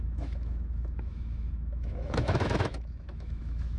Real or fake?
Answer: fake